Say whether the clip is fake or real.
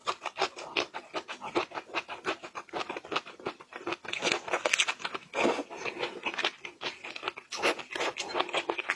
real